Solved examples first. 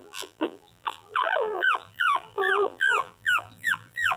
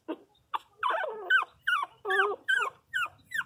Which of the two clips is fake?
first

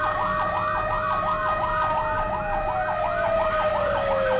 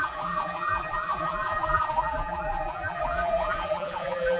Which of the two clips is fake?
second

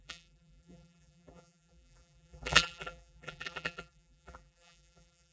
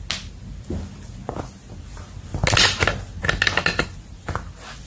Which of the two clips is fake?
first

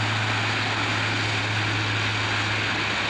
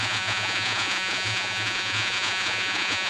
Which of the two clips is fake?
second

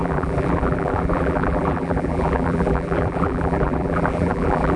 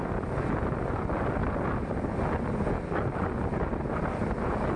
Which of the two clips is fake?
first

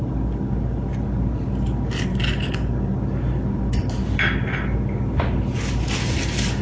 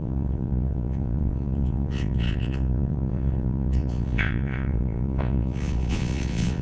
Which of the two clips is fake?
second